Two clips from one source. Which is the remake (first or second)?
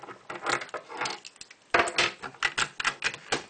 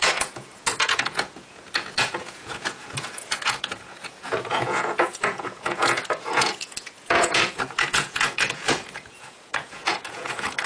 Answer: second